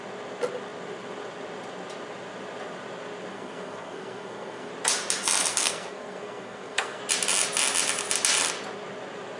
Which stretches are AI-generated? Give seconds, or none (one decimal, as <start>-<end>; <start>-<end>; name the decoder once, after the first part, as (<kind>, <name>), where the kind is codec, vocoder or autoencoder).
3.3-4.7 (codec, SNAC); 5.5-7.0